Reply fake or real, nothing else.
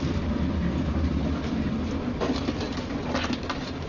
real